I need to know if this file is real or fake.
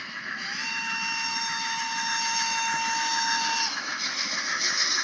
fake